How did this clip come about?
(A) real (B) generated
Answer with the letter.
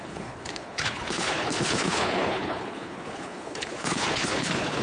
B